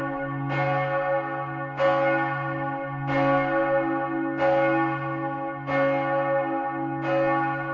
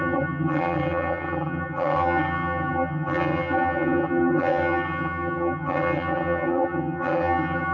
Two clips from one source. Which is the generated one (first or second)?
second